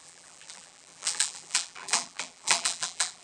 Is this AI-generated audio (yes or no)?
yes